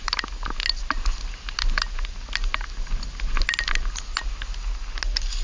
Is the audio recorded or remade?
recorded